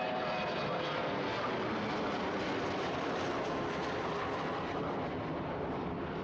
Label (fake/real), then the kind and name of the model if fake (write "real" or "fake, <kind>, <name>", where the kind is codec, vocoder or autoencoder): fake, vocoder, BigVGAN v2